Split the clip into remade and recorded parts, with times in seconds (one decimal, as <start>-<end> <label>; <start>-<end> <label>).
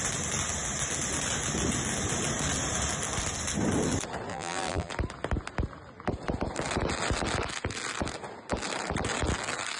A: 0.0-4.3 recorded; 4.3-4.9 remade; 4.9-9.8 recorded